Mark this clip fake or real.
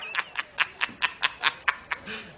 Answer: real